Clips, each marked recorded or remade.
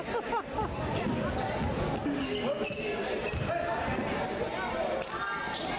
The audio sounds recorded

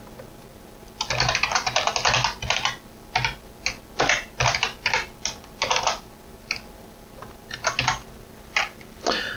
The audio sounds recorded